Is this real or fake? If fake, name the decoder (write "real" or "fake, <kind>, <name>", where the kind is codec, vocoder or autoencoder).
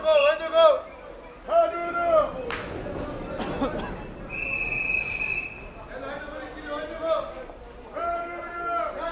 real